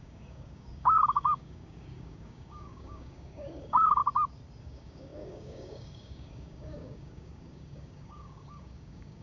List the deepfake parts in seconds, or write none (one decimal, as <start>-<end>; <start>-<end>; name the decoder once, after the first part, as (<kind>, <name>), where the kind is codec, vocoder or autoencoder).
0.0-4.0 (codec, DAC); 4.6-9.2